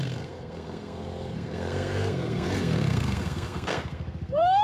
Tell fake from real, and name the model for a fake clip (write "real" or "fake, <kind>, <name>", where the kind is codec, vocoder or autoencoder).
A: fake, codec, SNAC